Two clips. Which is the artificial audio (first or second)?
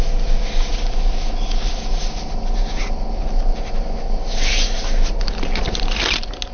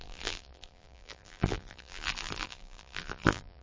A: second